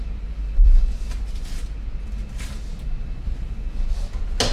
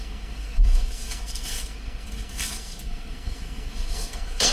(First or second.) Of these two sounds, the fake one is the second